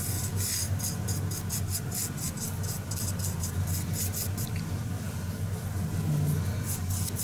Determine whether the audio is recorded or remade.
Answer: recorded